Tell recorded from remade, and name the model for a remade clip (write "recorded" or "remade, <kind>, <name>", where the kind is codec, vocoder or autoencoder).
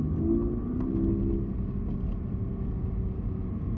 recorded